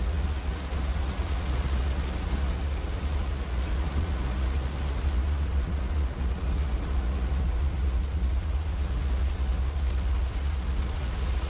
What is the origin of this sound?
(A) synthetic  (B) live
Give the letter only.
A